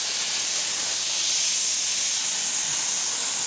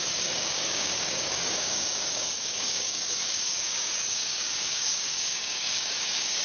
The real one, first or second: first